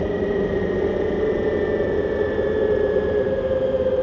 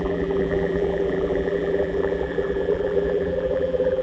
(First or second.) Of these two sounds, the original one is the first